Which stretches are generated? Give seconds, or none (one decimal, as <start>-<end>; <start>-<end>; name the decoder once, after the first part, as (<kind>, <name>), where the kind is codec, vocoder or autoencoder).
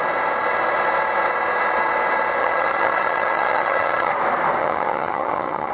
2.4-4.1 (vocoder, HiFi-GAN); 4.6-5.7